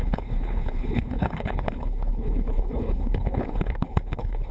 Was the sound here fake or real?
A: fake